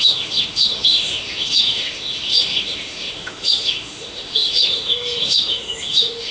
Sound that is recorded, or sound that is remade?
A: remade